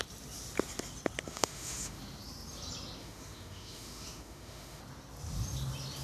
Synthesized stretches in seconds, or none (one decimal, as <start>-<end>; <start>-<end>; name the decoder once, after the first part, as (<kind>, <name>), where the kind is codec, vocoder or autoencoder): 1.3-2.0 (autoencoder, DAC-VAE); 3.0-4.8